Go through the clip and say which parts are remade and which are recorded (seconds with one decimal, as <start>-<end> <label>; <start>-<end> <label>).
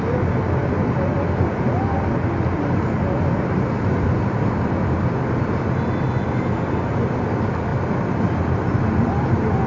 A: 0.0-9.7 recorded